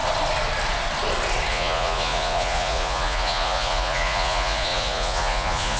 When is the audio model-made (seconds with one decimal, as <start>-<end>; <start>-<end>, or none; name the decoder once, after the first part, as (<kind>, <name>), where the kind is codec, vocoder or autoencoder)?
1.5-5.8 (vocoder, Vocos)